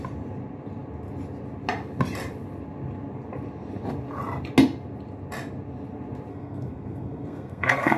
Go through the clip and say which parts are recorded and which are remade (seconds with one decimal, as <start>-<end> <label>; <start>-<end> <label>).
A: 0.0-6.3 recorded; 6.3-8.0 remade